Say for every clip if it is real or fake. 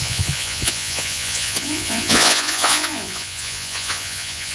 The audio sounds fake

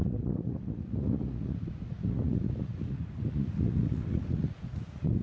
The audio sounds fake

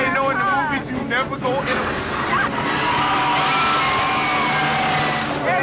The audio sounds real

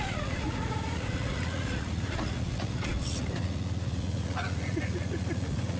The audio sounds fake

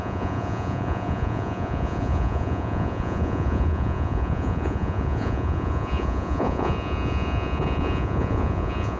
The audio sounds fake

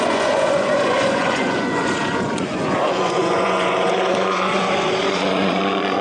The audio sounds fake